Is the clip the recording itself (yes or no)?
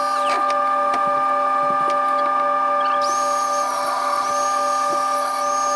yes